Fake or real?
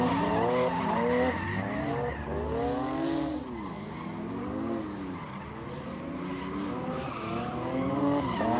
real